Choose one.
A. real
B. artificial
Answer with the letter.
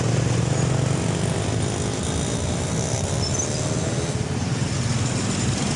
A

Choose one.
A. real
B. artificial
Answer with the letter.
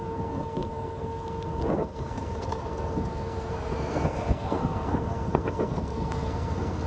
B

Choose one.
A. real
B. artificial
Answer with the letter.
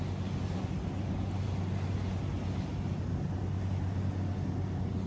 A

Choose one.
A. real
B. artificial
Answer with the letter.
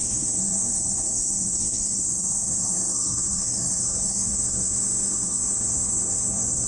B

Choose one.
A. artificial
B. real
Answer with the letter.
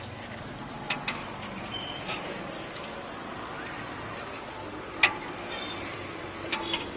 B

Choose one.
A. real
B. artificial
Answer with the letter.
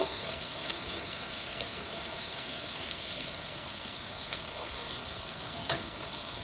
B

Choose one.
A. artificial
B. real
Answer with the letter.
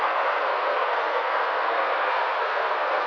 A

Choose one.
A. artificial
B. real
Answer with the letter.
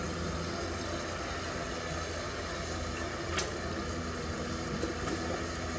B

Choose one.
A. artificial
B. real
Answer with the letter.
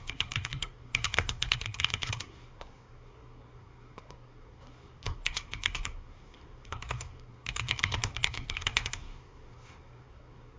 A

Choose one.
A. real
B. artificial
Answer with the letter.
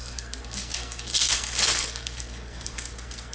B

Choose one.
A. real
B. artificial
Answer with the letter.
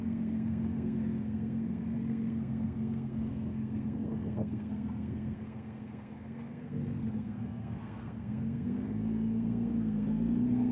B